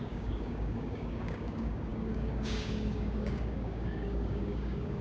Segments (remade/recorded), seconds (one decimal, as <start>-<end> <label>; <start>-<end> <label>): 0.0-5.0 remade